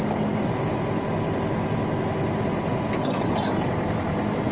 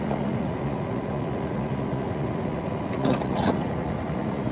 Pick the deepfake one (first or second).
second